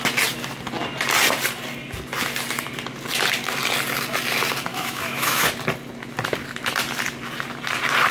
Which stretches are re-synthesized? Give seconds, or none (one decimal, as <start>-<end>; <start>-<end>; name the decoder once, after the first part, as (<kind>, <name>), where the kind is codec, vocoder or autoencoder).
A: 4.7-5.5 (autoencoder, DAC-VAE)